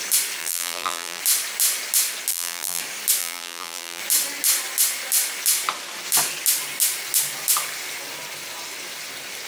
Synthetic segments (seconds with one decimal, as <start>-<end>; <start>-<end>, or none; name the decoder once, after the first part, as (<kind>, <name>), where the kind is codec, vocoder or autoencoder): 0.4-1.2 (vocoder, BigVGAN v2); 2.3-2.8; 3.2-4.0

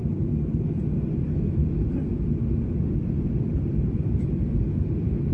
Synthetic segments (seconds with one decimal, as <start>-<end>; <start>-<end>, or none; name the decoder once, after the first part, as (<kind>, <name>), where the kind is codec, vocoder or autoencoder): 0.0-5.3 (vocoder, BigVGAN v2)

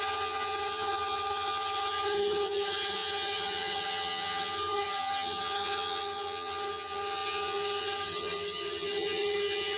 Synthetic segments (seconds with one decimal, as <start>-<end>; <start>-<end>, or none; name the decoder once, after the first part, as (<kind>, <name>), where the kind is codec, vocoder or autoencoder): 0.0-9.8 (vocoder, HiFi-GAN)

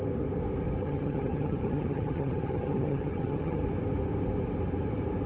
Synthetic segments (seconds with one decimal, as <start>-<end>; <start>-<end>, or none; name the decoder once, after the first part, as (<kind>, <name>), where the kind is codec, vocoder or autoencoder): 0.8-3.6 (vocoder, HiFi-GAN)

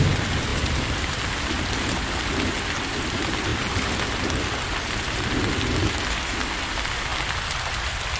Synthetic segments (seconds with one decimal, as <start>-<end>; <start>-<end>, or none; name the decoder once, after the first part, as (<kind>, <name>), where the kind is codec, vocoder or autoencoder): none

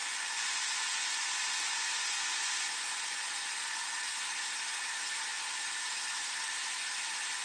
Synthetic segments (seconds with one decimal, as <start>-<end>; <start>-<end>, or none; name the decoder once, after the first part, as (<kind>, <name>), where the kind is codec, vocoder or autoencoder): 0.0-3.9 (vocoder, Vocos)

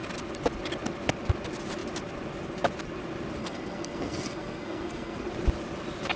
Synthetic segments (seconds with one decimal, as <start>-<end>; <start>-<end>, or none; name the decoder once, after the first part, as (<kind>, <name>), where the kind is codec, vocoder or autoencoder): 3.4-5.3 (codec, SNAC)

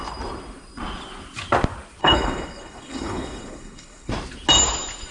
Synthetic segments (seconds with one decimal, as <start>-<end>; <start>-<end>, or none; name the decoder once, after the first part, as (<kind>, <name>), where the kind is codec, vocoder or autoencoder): 2.0-4.1 (codec, HILCodec)